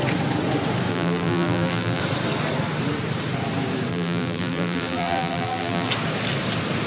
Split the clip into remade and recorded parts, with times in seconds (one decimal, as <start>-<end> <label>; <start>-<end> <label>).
0.0-0.9 recorded; 0.9-2.0 remade; 2.0-3.9 recorded; 3.9-5.9 remade; 5.9-6.9 recorded